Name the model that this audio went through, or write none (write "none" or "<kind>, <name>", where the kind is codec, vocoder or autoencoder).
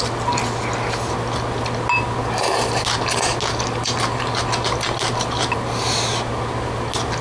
none